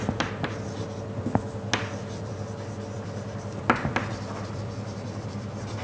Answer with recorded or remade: recorded